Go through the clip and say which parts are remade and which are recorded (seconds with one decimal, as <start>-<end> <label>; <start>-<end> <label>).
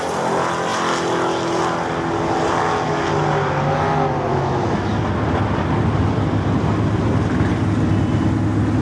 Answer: 0.0-4.3 recorded; 4.3-4.9 remade; 4.9-8.8 recorded